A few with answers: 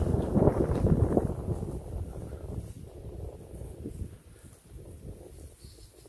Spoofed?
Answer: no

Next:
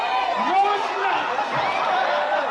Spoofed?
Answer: no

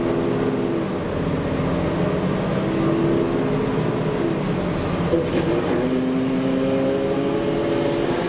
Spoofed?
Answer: no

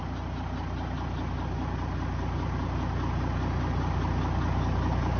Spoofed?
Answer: no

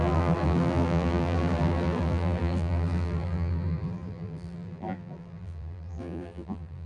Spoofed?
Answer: yes